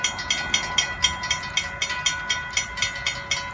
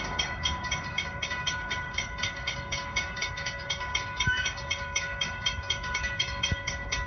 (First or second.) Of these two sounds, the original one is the first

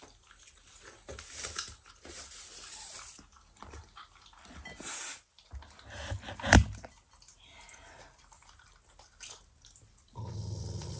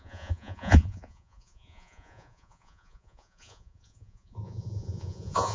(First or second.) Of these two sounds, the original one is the first